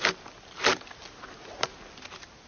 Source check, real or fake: real